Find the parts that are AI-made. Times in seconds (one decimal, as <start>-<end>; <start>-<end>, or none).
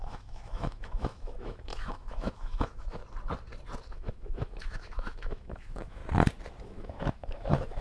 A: 0.0-3.0; 3.9-6.0; 6.6-7.8